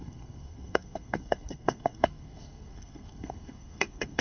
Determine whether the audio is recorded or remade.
remade